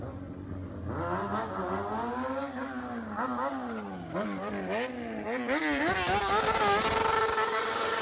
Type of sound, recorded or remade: recorded